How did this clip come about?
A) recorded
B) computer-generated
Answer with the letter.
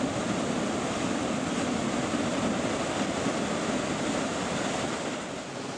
A